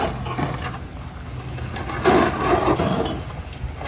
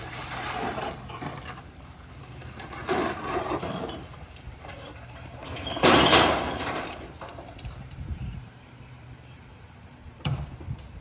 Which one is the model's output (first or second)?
second